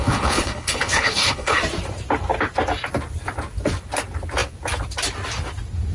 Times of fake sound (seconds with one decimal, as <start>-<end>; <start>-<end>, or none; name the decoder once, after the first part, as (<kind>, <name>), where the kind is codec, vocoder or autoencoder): 0.0-1.6 (codec, HILCodec)